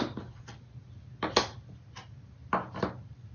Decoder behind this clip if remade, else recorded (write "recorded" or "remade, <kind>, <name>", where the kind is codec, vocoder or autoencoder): recorded